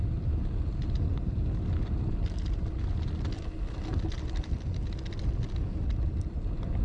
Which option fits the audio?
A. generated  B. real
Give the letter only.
B